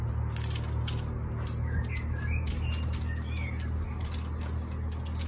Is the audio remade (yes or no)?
no